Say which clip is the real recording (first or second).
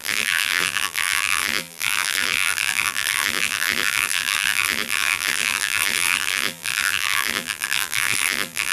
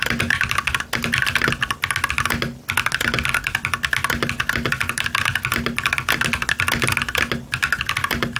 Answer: second